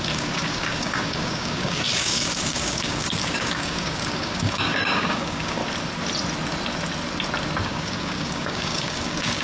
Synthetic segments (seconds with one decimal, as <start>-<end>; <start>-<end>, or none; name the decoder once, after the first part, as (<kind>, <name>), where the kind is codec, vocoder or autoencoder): 0.0-5.6 (codec, DAC); 7.6-9.4